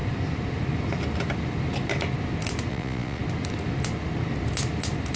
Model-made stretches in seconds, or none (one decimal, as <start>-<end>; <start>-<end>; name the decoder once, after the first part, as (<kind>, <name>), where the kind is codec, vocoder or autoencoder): 2.7-3.2 (vocoder, Vocos)